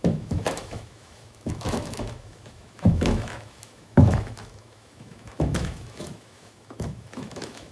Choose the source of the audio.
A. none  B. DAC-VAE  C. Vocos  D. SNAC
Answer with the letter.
B